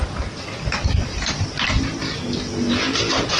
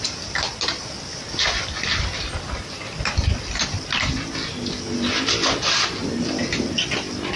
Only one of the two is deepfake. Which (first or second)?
second